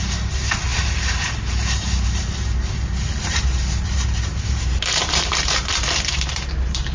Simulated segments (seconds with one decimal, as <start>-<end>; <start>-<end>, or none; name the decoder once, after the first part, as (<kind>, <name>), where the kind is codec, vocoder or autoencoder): 0.0-6.9 (vocoder, BigVGAN v2)